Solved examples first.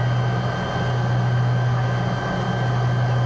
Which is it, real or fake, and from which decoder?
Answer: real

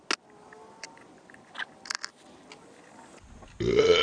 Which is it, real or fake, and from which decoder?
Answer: real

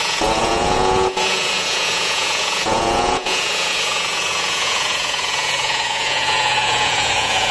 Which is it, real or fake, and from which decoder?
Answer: fake, vocoder, Vocos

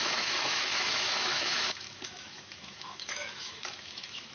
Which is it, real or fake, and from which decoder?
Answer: fake, autoencoder, DAC-VAE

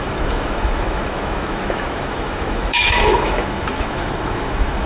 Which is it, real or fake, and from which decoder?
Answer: fake, autoencoder, DAC-VAE